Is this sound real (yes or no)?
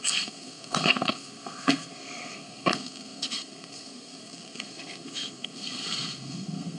no